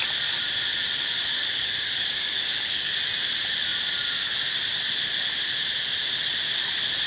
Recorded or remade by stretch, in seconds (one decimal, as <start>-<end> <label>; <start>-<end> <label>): 0.0-1.3 recorded; 1.3-2.9 remade; 2.9-7.1 recorded